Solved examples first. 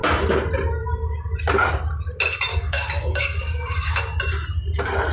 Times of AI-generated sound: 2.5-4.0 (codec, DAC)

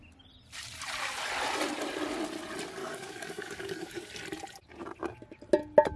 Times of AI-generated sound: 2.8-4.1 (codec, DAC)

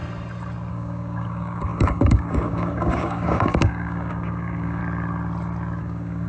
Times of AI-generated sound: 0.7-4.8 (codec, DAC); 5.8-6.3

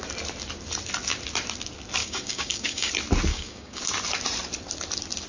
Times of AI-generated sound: 2.0-2.9 (codec, DAC); 3.3-3.8

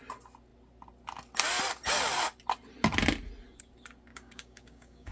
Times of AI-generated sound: 4.1-5.1 (codec, DAC)

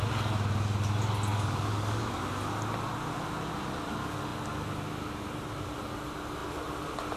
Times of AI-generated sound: 1.3-2.2 (codec, DAC)